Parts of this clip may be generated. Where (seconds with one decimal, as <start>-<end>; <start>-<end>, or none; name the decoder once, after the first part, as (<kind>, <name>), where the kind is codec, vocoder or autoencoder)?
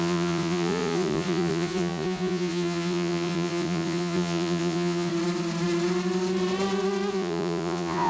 0.0-5.1 (vocoder, Vocos); 7.1-8.1